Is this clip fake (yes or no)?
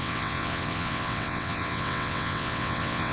yes